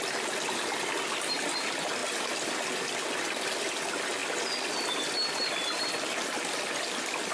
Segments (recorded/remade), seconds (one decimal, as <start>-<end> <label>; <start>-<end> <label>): 0.0-7.3 recorded